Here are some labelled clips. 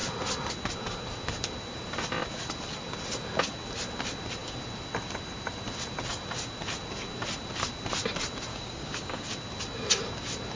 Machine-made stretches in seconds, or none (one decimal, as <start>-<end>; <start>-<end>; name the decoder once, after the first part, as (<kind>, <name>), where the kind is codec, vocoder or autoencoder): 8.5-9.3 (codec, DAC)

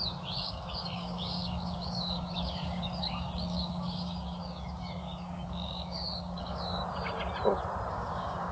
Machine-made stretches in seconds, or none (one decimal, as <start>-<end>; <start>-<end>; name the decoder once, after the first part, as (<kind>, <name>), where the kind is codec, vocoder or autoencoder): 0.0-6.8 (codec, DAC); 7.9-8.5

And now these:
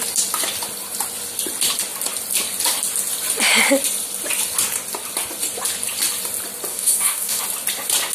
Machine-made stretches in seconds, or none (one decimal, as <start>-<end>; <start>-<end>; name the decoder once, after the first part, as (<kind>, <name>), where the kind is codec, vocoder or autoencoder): 6.7-7.4 (codec, DAC)

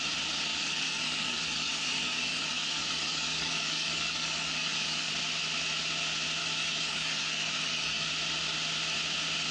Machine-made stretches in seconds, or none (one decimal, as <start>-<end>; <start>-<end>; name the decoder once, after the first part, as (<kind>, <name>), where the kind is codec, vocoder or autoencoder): 0.5-5.1 (codec, DAC); 6.4-8.1

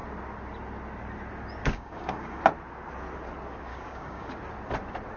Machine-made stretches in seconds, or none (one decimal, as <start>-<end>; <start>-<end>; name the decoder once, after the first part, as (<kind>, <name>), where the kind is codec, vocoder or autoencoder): 1.6-2.4 (codec, DAC); 3.7-4.3

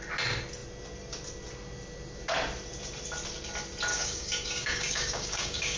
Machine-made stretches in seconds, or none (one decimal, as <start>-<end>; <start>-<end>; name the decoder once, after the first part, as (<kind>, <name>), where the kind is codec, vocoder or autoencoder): 3.9-5.8 (codec, DAC)